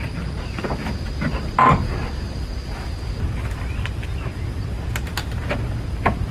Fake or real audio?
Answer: real